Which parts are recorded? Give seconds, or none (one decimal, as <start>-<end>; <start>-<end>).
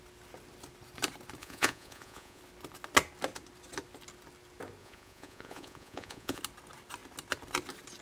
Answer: 0.0-1.4; 2.4-4.8; 6.4-8.0